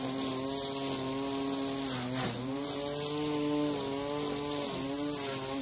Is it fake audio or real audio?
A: real